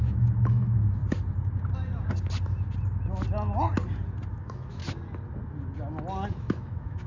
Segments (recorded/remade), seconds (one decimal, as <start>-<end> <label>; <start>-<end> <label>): 0.0-1.0 remade; 1.0-4.3 recorded; 4.3-4.8 remade; 4.8-6.3 recorded; 6.3-7.1 remade